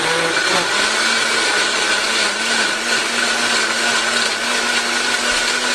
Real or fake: real